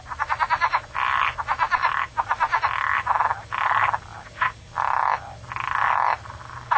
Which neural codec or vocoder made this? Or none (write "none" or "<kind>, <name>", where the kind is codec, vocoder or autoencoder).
none